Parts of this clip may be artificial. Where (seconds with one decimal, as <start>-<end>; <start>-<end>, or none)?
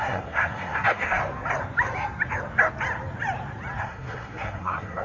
0.0-1.2; 3.8-5.0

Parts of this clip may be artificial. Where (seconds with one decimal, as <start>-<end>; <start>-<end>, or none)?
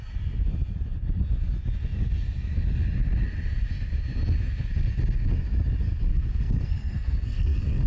6.1-7.9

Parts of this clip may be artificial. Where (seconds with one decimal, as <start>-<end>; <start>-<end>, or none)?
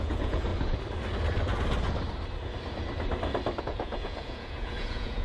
0.0-0.5; 3.6-5.2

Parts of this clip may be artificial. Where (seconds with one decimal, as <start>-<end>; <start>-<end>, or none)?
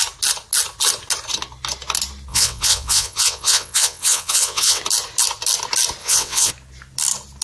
2.3-4.8; 6.0-6.5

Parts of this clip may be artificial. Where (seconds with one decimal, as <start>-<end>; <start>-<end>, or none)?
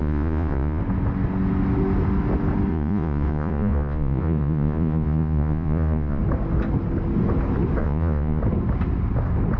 0.0-0.8; 2.7-6.2; 7.8-8.4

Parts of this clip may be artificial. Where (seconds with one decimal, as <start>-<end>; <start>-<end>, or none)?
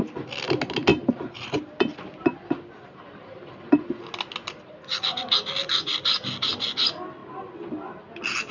0.9-1.6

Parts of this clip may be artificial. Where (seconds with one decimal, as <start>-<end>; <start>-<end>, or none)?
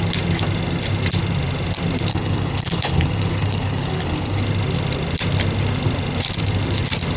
2.1-4.4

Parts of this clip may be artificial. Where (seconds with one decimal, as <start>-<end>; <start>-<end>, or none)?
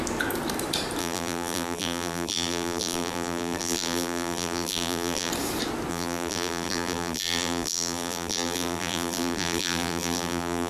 1.0-5.3; 5.9-10.7